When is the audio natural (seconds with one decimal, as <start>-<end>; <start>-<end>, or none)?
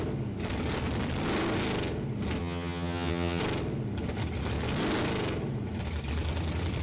0.0-2.4; 3.4-6.8